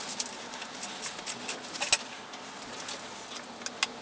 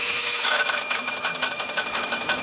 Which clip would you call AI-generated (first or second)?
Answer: second